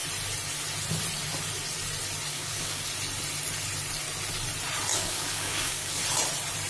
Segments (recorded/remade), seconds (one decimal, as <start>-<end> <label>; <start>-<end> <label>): 0.0-2.3 recorded; 2.3-2.8 remade; 2.8-4.9 recorded; 4.9-6.0 remade; 6.0-6.7 recorded